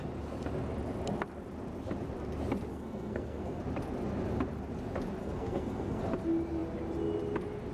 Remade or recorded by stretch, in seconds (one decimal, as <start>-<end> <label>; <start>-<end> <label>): 0.0-2.7 recorded; 2.7-3.6 remade; 3.6-5.2 recorded; 5.2-6.0 remade; 6.0-7.7 recorded